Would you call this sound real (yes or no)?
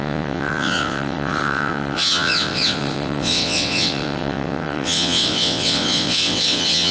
no